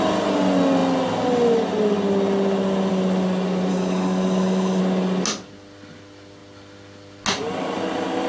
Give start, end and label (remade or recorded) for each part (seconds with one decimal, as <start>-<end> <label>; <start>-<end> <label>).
0.0-3.7 recorded; 3.7-4.8 remade; 4.8-8.3 recorded